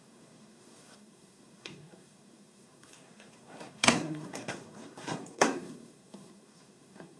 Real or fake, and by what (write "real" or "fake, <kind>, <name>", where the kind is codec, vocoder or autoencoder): fake, codec, SNAC